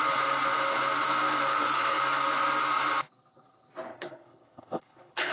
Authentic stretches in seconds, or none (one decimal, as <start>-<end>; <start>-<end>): 0.0-1.5; 2.0-3.9